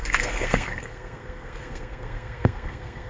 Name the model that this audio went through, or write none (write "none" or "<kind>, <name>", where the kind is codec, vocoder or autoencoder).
codec, SNAC